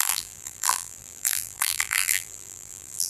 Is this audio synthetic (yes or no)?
yes